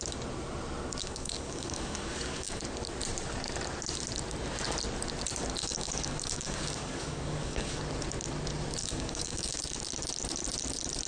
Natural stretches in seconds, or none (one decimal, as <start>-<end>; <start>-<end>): 0.0-1.0; 2.6-5.6; 7.8-8.8; 9.6-11.1